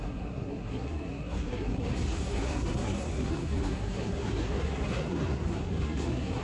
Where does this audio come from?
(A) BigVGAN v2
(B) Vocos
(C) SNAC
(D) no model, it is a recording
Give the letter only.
C